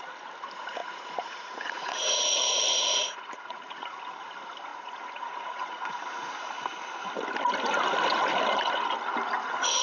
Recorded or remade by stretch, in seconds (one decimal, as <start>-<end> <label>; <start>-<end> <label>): 0.0-0.8 recorded; 0.8-4.1 remade; 4.1-4.7 recorded; 4.7-6.3 remade; 6.3-9.8 recorded